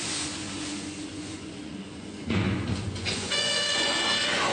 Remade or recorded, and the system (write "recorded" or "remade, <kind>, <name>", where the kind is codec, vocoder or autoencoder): remade, vocoder, Vocos